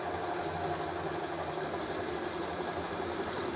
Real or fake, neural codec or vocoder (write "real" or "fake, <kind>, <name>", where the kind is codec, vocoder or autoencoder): real